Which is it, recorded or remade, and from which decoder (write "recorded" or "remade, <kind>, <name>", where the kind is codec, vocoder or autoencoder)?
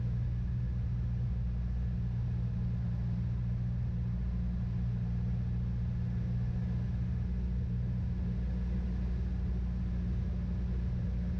recorded